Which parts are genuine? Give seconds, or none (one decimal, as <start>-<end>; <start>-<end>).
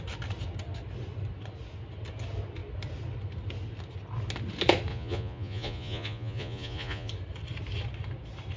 0.0-4.9; 7.1-8.6